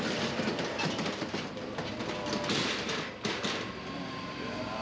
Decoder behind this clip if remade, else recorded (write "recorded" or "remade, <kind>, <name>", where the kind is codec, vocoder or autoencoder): recorded